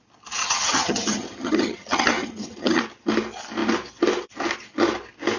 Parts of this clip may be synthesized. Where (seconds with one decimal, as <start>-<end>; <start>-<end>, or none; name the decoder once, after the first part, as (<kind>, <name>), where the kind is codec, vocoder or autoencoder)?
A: 0.4-2.8 (vocoder, HiFi-GAN)